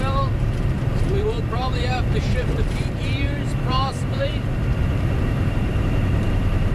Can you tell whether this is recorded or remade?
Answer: remade